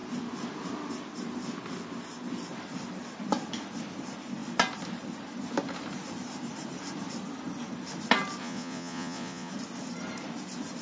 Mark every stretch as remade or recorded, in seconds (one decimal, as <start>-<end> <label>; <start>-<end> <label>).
0.0-8.4 recorded; 8.4-9.5 remade; 9.5-10.8 recorded